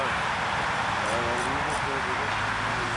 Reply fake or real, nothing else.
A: real